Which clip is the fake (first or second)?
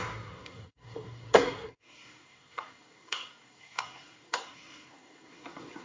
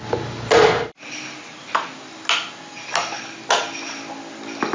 first